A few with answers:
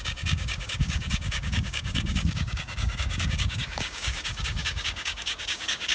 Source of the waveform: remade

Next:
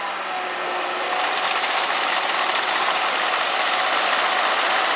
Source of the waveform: recorded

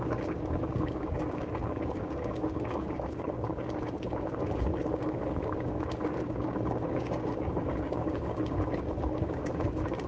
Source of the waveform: remade